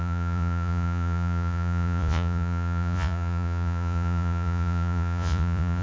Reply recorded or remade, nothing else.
remade